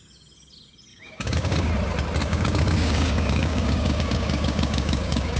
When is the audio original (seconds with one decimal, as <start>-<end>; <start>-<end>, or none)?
0.0-0.9; 1.7-2.2